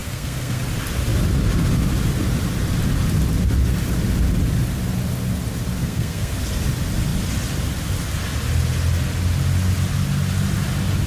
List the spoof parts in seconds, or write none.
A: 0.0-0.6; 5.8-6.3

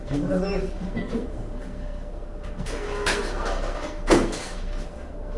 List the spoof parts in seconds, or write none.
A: 0.0-5.4

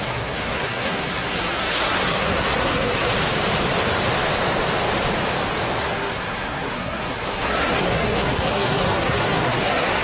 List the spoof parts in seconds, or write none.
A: 0.0-3.1; 5.8-10.0

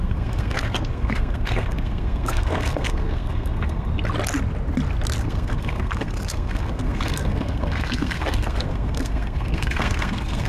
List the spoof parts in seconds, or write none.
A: 0.0-3.9; 5.2-10.5

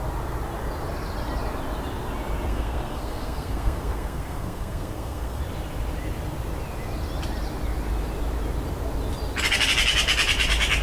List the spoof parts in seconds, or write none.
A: 2.5-5.4